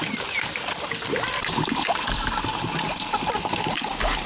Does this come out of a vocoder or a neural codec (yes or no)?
no